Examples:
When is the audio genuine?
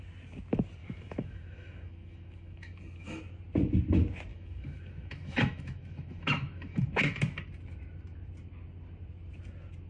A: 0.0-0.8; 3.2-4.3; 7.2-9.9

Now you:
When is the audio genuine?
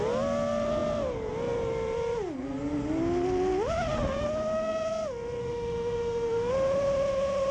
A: 0.0-5.4; 6.5-7.5